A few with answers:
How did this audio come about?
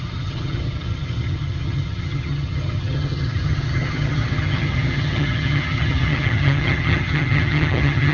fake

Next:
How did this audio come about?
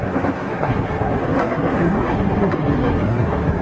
fake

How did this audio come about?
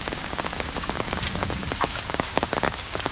fake